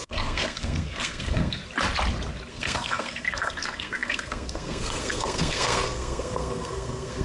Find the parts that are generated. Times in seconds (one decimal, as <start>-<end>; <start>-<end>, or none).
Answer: 0.0-1.6; 2.5-7.2

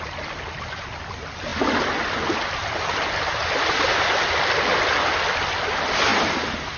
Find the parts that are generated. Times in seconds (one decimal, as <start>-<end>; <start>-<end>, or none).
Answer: none

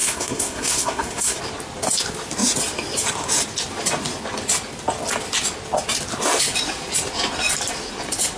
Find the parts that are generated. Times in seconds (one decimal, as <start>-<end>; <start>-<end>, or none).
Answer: 0.0-1.4

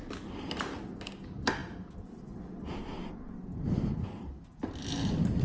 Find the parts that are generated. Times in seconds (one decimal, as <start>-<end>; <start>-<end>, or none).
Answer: none